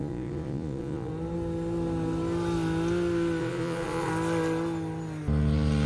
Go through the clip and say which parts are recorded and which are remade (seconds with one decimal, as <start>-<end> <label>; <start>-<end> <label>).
0.0-1.1 remade; 1.1-3.4 recorded; 3.4-4.1 remade; 4.1-5.9 recorded